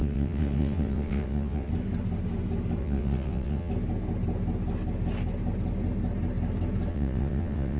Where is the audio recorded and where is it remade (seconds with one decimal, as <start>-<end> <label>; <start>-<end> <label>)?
0.0-1.7 remade; 1.7-2.8 recorded; 2.8-3.7 remade; 3.7-6.9 recorded; 6.9-7.8 remade